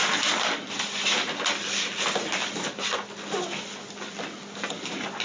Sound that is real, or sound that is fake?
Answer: real